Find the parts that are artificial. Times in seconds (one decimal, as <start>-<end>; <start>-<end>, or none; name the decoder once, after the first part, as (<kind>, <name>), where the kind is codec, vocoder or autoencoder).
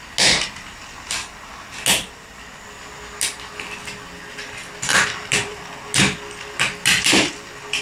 1.9-2.6 (vocoder, BigVGAN v2); 4.9-5.6